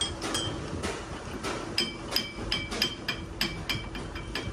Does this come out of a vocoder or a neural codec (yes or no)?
no